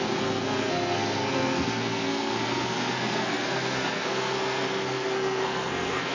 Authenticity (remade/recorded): remade